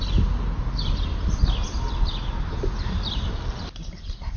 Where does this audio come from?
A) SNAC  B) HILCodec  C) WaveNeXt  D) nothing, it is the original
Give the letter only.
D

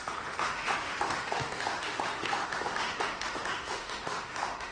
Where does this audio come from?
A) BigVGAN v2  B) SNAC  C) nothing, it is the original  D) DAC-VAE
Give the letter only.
D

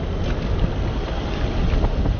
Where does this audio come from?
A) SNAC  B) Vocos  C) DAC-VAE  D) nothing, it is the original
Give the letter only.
D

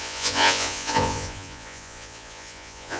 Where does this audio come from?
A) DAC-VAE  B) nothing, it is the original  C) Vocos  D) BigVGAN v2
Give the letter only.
C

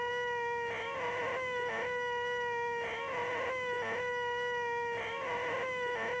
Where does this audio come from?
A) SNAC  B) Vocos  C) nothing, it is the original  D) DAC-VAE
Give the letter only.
C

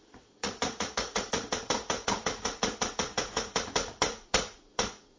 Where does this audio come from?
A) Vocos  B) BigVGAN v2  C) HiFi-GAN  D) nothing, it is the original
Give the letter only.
A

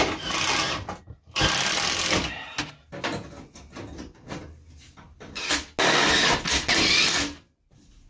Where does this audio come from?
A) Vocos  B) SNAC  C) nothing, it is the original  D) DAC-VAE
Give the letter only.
C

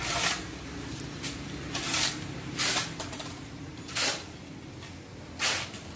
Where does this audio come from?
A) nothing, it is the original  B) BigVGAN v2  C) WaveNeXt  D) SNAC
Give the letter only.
A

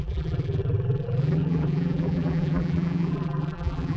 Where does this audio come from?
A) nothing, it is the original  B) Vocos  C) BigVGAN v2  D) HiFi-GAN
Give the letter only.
C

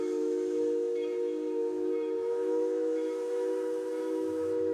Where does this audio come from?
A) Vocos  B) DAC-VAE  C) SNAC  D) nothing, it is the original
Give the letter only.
B